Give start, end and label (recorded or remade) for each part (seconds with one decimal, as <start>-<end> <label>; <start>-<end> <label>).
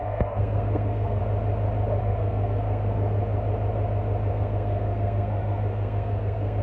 0.0-1.2 remade; 1.2-2.0 recorded; 2.0-3.2 remade; 3.2-4.3 recorded; 4.3-6.6 remade